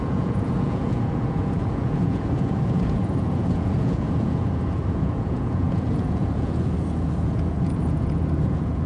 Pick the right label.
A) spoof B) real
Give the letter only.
A